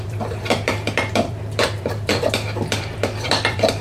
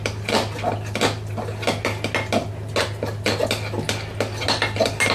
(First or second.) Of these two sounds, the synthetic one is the first